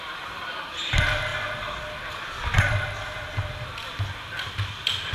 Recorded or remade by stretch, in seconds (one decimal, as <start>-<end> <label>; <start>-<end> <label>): 0.0-5.1 recorded